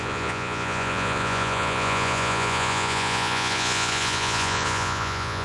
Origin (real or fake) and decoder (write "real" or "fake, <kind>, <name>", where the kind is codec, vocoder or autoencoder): fake, vocoder, Vocos